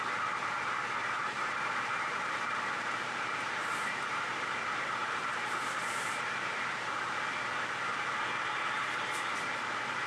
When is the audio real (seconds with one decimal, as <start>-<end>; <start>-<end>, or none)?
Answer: 0.0-1.0; 4.2-5.0; 6.6-10.1